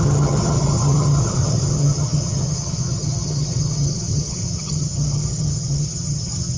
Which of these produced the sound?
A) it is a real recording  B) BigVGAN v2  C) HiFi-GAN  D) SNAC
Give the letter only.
C